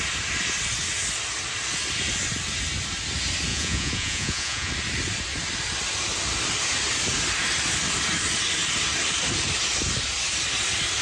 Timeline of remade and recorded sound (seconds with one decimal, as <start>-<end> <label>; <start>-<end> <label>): 0.0-3.5 recorded; 3.5-4.7 remade; 4.7-11.0 recorded